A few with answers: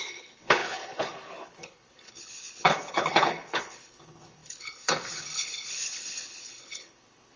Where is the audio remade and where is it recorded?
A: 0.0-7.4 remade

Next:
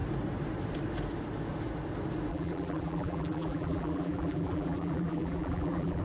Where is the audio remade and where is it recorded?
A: 0.0-2.3 recorded; 2.3-6.0 remade